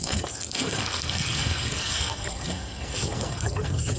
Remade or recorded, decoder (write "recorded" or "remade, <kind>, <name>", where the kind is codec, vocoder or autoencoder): remade, codec, SNAC